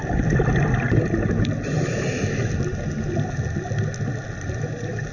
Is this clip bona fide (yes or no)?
yes